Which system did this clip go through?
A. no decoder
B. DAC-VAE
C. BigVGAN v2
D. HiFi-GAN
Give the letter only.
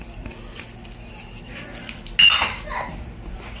A